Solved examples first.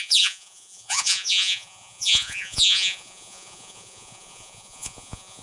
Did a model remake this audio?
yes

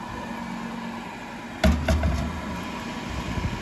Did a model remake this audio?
no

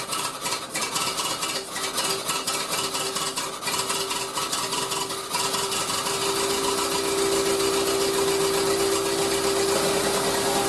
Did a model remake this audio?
no